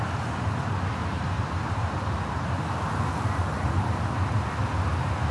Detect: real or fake real